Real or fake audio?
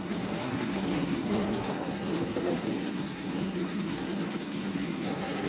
fake